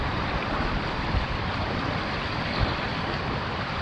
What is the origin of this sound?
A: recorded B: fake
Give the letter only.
B